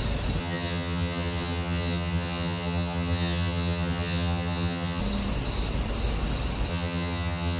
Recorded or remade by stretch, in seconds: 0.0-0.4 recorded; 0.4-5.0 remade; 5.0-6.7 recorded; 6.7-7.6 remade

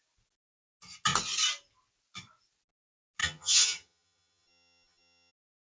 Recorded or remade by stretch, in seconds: 0.0-3.2 recorded; 3.2-5.3 remade; 5.3-5.8 recorded

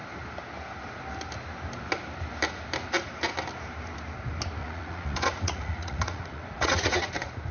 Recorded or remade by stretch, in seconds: 0.0-4.6 recorded; 4.6-7.1 remade; 7.1-7.5 recorded

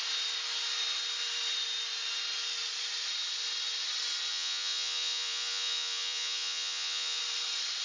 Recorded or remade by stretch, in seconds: 0.0-4.3 recorded; 4.3-7.2 remade; 7.2-7.8 recorded

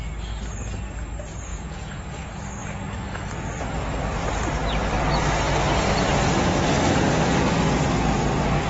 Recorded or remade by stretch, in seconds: 0.0-1.5 recorded; 1.5-2.2 remade; 2.2-8.7 recorded

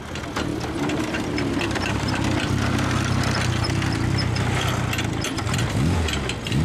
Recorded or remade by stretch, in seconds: 0.0-0.5 recorded; 0.5-2.1 remade; 2.1-6.6 recorded

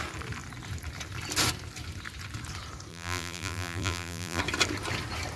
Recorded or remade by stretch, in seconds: 0.0-2.9 recorded; 2.9-4.4 remade; 4.4-5.4 recorded

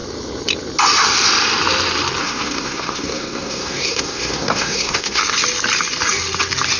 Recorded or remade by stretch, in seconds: 0.0-2.2 recorded; 2.2-5.2 remade; 5.2-6.8 recorded